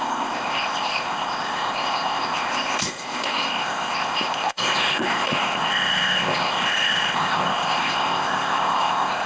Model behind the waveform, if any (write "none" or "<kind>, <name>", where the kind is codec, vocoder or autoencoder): codec, ZipCodec